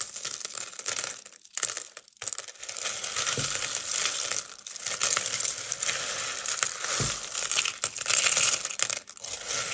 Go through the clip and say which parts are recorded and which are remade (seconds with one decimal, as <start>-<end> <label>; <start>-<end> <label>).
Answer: 0.0-9.7 recorded